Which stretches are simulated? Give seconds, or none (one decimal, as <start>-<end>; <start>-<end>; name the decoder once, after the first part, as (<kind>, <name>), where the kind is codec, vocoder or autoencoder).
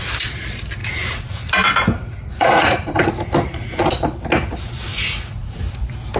0.8-1.5 (vocoder, Vocos); 2.0-3.1; 4.9-5.6